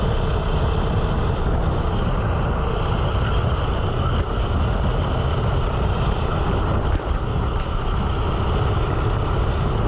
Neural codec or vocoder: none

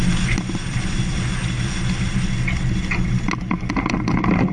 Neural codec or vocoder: none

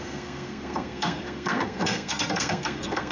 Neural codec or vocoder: codec, SNAC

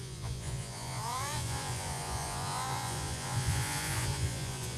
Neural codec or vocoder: vocoder, Vocos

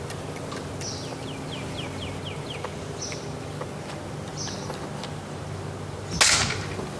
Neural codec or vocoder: none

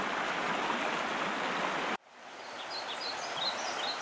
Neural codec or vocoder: none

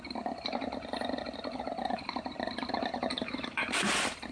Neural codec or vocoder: vocoder, BigVGAN v2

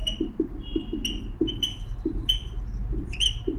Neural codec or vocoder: none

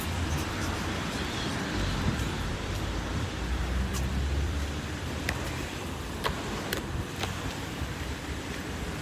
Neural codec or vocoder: vocoder, BigVGAN v2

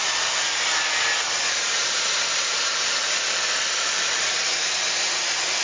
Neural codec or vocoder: vocoder, BigVGAN v2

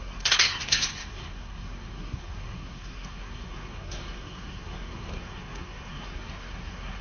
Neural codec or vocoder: codec, SNAC